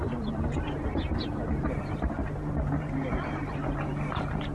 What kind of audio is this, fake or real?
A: fake